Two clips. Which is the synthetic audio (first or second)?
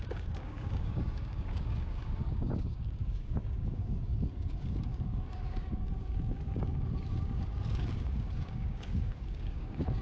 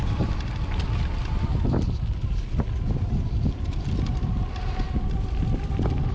first